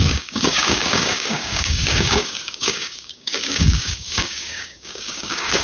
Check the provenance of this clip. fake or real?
fake